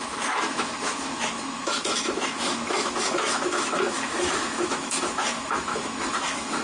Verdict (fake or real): fake